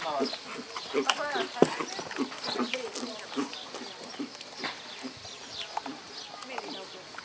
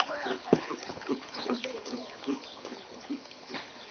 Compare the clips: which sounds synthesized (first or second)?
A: second